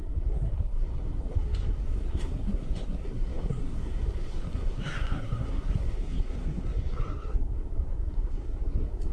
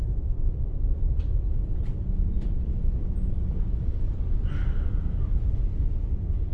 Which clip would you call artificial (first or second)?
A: first